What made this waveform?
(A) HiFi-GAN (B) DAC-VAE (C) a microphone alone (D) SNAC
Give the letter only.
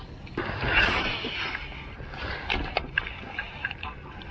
C